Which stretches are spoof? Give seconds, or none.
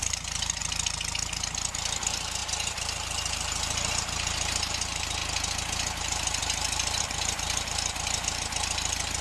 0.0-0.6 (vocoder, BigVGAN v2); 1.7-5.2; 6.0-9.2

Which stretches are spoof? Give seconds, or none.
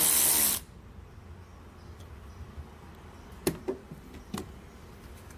none